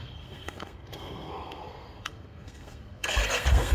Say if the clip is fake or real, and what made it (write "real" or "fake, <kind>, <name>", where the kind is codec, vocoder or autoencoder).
fake, codec, SNAC